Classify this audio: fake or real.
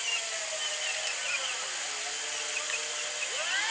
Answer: real